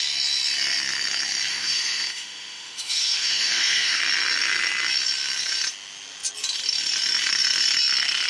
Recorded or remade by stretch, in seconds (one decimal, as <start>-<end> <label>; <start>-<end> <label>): 0.0-1.5 recorded; 1.5-4.0 remade; 4.0-8.3 recorded